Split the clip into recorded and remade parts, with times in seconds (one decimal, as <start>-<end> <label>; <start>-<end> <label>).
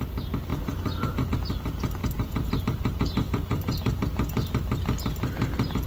0.0-0.5 recorded; 0.5-1.3 remade; 1.3-2.0 recorded; 2.0-2.6 remade; 2.6-3.5 recorded; 3.5-4.0 remade; 4.0-5.9 recorded